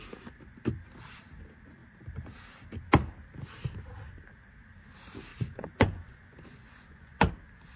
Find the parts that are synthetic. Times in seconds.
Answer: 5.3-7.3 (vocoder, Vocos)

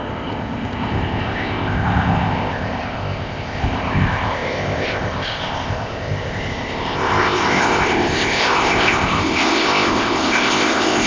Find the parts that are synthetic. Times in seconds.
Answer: 0.0-11.1 (codec, ZipCodec)